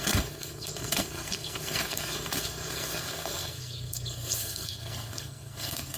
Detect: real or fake fake